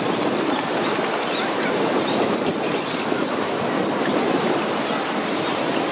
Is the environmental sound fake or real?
real